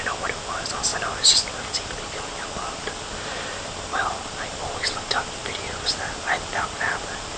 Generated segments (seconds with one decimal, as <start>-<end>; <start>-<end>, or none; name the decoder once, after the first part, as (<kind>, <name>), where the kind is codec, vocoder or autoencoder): none